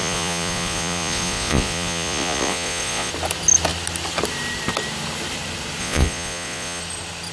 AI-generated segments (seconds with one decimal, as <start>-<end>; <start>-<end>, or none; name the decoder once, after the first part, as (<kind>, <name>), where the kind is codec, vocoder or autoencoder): 0.0-3.1 (vocoder, Vocos); 5.8-6.8